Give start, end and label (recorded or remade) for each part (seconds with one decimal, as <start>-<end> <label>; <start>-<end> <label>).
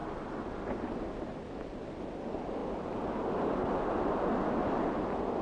0.0-5.4 recorded